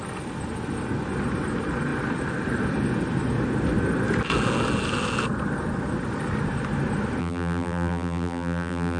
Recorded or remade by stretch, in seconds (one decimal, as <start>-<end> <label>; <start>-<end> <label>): 0.0-7.2 recorded; 7.2-9.0 remade